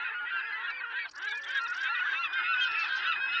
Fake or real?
real